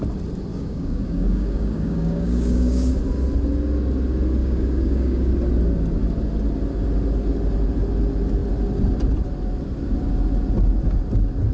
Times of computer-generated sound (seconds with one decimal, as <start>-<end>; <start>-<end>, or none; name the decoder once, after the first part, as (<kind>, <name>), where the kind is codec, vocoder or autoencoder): 0.5-2.9 (codec, DAC); 4.4-5.3

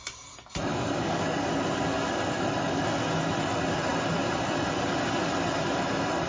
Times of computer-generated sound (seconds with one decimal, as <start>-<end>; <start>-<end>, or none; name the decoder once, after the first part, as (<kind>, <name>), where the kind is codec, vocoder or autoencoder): 0.7-1.5 (codec, DAC)

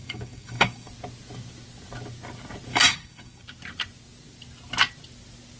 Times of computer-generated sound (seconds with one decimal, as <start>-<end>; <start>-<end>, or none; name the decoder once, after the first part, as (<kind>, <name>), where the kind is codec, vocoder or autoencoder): 0.0-0.9 (codec, DAC); 2.7-3.4